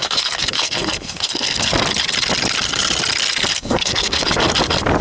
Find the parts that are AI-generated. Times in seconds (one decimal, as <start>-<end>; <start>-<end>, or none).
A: 0.0-1.7; 3.5-4.2